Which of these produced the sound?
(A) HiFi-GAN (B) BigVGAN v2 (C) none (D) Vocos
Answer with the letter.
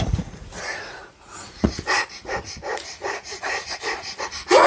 D